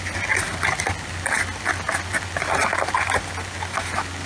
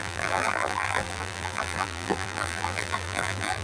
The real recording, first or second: first